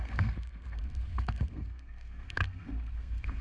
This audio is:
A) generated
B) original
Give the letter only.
A